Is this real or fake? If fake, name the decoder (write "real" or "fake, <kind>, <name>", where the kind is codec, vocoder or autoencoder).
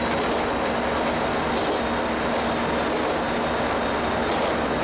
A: real